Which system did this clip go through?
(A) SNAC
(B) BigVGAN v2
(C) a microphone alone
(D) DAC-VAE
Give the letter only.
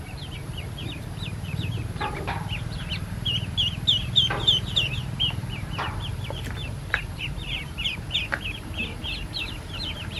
B